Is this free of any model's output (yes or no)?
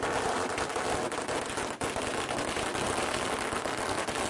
yes